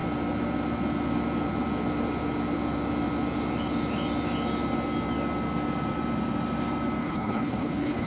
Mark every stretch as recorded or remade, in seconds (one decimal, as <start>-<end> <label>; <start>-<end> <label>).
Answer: 0.0-7.0 recorded; 7.0-8.1 remade

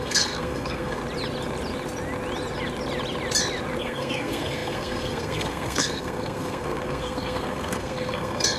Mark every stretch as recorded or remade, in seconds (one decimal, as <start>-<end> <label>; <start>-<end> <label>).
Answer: 0.0-1.0 remade; 1.0-3.8 recorded; 3.8-8.6 remade

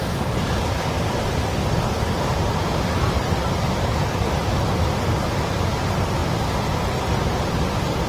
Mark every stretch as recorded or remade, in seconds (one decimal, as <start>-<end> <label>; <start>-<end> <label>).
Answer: 0.0-3.7 remade; 3.7-4.4 recorded; 4.4-5.7 remade; 5.7-8.1 recorded

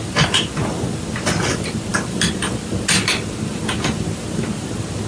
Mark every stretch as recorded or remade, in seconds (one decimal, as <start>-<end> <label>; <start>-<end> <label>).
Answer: 0.0-5.1 recorded

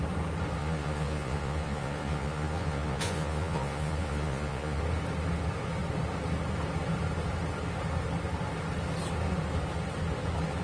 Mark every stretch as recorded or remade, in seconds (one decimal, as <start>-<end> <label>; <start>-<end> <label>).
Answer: 0.0-0.6 recorded; 0.6-4.8 remade; 4.8-10.6 recorded

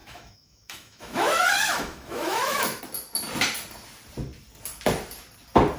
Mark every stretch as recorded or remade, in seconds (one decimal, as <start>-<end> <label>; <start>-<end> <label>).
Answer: 0.0-2.8 remade; 2.8-5.8 recorded